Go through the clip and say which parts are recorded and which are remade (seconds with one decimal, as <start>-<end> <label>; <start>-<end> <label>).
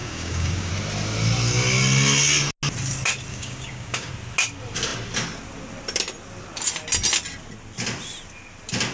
0.0-0.7 remade; 0.7-3.3 recorded; 3.3-4.1 remade; 4.1-8.9 recorded